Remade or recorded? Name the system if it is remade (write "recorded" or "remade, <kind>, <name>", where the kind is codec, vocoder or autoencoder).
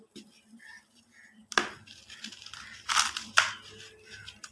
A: recorded